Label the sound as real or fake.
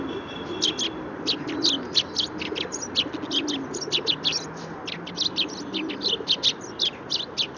real